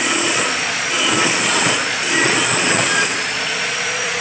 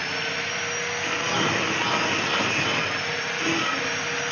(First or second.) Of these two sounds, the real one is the second